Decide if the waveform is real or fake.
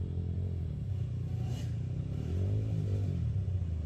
real